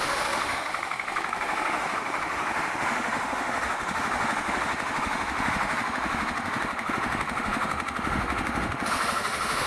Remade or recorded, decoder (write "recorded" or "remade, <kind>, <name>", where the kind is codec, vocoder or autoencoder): remade, autoencoder, DAC-VAE